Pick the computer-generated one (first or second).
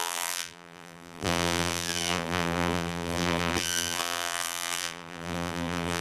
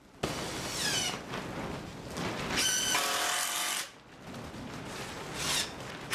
first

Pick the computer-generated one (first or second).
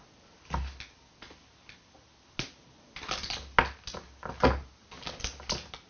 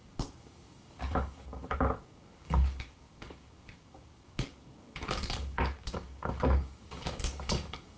second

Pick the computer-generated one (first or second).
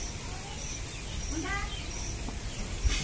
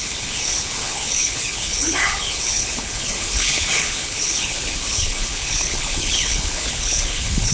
second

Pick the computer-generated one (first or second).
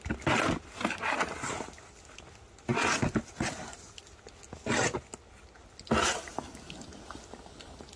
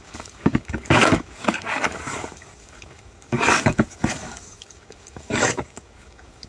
second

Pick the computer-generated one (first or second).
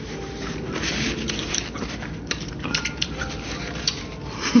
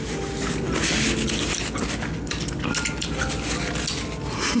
first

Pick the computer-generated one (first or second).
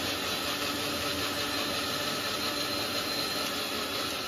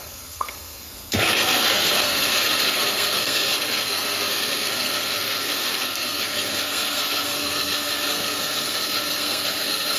second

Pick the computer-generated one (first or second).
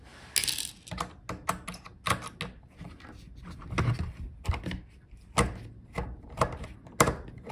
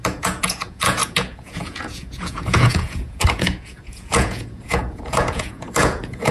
second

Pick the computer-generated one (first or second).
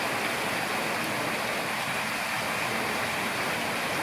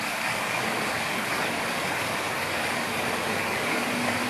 second